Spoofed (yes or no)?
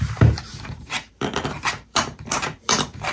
yes